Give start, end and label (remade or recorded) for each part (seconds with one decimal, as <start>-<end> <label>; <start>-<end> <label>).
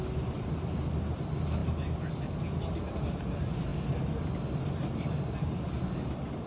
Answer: 0.0-1.6 remade; 1.6-2.9 recorded; 2.9-3.7 remade; 3.7-5.4 recorded; 5.4-6.5 remade